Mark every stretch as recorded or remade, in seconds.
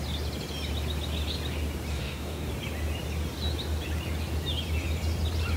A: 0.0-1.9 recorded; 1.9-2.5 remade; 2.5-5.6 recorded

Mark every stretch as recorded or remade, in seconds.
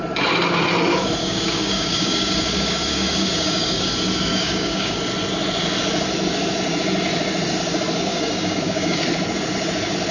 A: 0.0-1.2 recorded; 1.2-3.9 remade; 3.9-4.3 recorded; 4.3-5.0 remade; 5.0-8.1 recorded; 8.1-9.0 remade; 9.0-10.1 recorded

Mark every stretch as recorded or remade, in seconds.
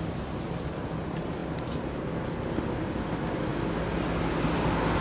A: 0.0-5.0 recorded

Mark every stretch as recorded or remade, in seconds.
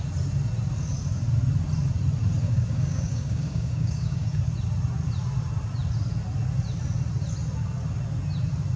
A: 0.0-2.4 recorded; 2.4-4.4 remade; 4.4-8.8 recorded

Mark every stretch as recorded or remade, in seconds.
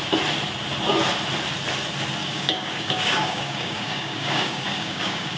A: 0.0-2.2 recorded; 2.2-5.4 remade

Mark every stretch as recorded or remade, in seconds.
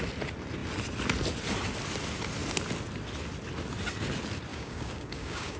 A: 0.0-4.5 recorded; 4.5-5.6 remade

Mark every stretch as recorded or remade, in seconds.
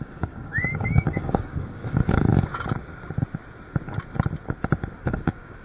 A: 0.0-2.3 remade; 2.3-5.0 recorded; 5.0-5.6 remade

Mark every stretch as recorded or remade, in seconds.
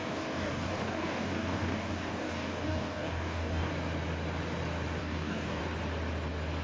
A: 0.0-3.7 remade; 3.7-5.0 recorded; 5.0-5.6 remade; 5.6-6.6 recorded